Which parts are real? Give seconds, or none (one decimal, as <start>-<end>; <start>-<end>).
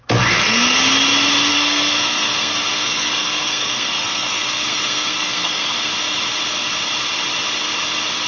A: 0.0-1.5; 5.9-8.3